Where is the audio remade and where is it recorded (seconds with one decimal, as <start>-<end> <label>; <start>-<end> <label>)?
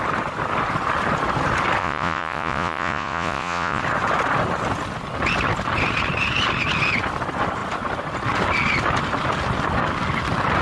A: 0.0-1.8 recorded; 1.8-3.8 remade; 3.8-10.6 recorded